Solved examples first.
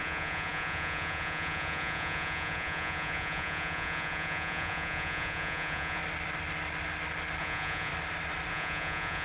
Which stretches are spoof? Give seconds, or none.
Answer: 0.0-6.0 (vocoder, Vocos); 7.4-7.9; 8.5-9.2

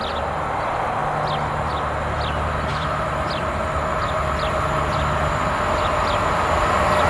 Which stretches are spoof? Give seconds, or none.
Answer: 2.7-3.6 (vocoder, BigVGAN v2)

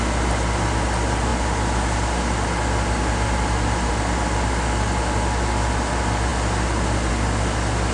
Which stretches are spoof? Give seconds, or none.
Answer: none

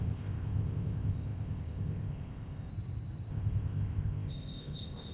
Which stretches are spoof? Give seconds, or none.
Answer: 0.0-2.7 (codec, ZipCodec); 3.3-5.1